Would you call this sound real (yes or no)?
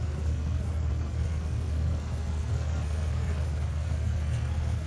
no